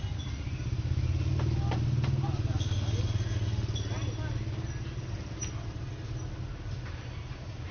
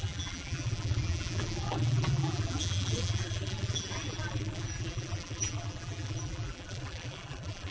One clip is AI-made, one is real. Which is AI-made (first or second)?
second